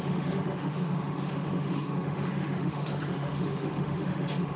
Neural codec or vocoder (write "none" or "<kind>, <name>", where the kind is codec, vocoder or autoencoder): autoencoder, DAC-VAE